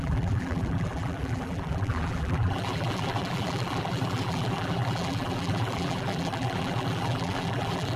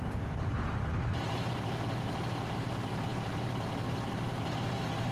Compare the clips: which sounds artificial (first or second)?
first